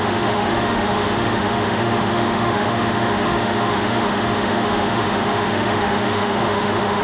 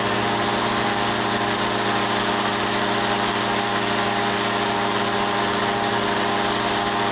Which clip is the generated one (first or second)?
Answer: first